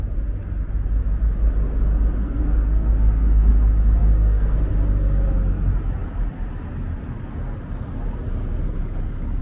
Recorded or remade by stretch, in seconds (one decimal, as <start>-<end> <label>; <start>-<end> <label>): 0.0-2.2 recorded; 2.2-3.5 remade; 3.5-4.0 recorded; 4.0-4.7 remade; 4.7-9.4 recorded